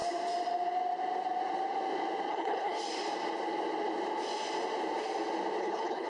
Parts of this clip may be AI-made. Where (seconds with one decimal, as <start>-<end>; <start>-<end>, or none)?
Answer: 2.3-2.8; 5.6-6.1